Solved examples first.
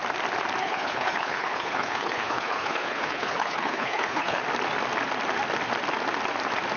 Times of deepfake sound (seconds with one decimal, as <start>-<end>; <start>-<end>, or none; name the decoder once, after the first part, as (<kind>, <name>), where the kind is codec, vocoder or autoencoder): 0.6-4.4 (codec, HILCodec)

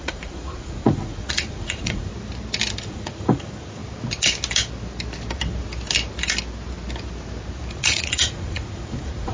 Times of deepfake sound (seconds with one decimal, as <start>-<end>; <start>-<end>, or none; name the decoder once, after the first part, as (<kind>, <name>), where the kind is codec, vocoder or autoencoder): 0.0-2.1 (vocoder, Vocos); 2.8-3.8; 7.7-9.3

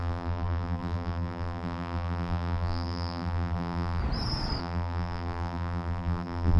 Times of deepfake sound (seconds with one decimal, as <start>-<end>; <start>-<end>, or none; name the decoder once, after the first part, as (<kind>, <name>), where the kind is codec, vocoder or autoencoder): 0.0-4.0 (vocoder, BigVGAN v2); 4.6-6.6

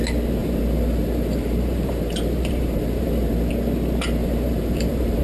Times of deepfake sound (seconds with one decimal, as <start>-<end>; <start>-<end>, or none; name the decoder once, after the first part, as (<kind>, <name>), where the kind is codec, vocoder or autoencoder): 0.4-3.5 (vocoder, BigVGAN v2); 4.2-5.2